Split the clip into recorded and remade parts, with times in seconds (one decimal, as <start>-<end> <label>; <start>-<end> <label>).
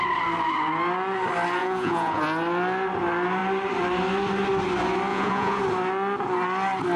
0.0-1.6 recorded; 1.6-2.2 remade; 2.2-5.1 recorded; 5.1-5.6 remade; 5.6-7.0 recorded